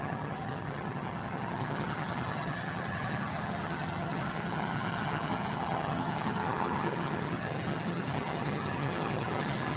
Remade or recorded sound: remade